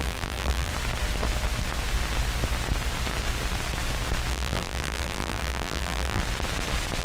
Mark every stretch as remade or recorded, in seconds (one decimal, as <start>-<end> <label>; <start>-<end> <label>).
0.0-0.7 remade; 0.7-4.3 recorded; 4.3-6.2 remade; 6.2-7.0 recorded